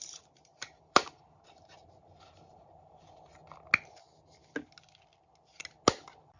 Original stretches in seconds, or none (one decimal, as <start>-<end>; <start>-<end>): 3.3-6.4

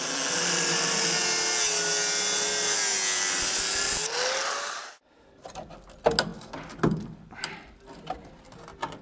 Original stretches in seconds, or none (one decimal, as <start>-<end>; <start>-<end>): 0.0-9.0

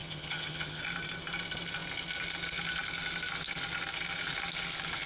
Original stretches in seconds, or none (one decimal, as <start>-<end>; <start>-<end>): 0.8-5.1

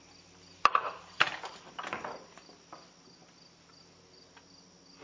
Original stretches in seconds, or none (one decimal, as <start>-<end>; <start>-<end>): 0.0-5.0

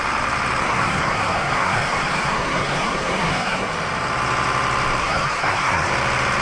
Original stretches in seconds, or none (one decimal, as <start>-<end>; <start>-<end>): 0.0-0.6; 3.7-5.0; 5.9-6.4

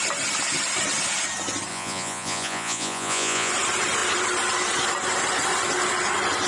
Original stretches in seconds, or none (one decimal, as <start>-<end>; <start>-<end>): 0.0-1.7; 3.5-6.5

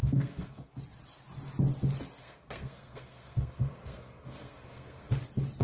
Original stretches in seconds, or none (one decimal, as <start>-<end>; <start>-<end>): 0.7-2.2; 5.1-5.6

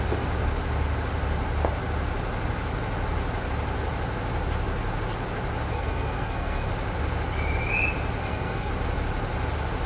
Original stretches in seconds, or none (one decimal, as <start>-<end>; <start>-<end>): 0.0-5.7; 6.7-8.2; 8.7-9.9